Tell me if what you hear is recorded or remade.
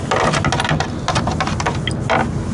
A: recorded